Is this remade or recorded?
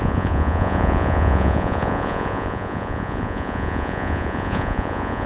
remade